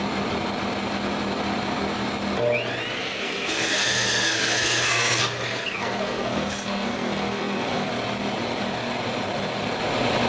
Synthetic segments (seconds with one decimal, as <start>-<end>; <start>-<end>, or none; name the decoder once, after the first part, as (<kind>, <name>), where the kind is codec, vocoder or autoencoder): 3.0-7.9 (codec, SNAC)